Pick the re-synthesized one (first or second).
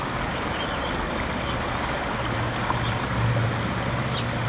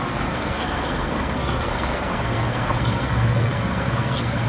second